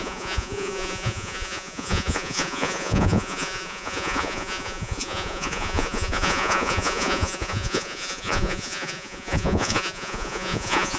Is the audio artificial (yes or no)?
yes